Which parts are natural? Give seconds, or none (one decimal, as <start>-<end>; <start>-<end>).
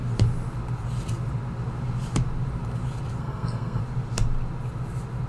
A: 0.0-3.2; 3.8-5.3